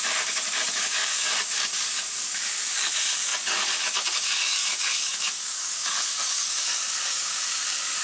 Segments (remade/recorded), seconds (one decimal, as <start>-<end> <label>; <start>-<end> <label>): 0.0-8.0 remade